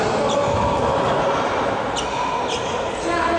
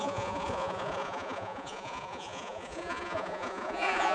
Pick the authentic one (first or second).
first